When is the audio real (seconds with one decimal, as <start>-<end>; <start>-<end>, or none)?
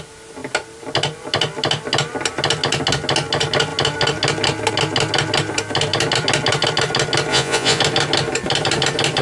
0.0-7.3; 7.8-9.2